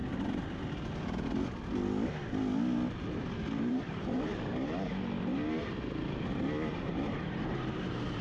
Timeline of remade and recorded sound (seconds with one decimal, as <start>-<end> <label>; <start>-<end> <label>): 0.0-3.7 recorded; 3.7-4.3 remade; 4.3-6.8 recorded; 6.8-8.2 remade